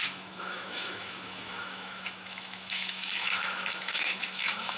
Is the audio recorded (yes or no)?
no